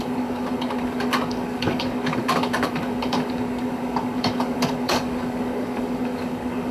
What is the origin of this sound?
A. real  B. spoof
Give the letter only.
B